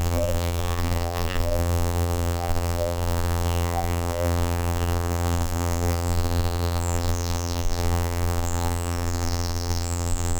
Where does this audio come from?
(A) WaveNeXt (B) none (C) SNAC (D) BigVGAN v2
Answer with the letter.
D